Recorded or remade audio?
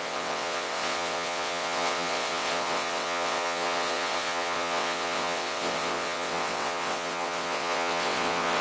remade